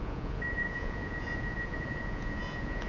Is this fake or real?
fake